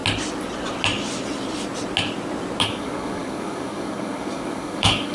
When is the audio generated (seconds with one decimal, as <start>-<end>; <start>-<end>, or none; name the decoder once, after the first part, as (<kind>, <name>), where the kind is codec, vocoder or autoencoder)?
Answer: 2.6-5.1 (codec, DAC)